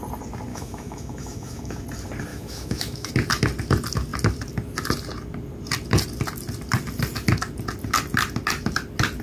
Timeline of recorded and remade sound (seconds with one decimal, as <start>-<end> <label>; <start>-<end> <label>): 0.0-0.5 recorded; 0.5-1.8 remade; 1.8-2.3 recorded; 2.3-3.1 remade; 3.1-9.2 recorded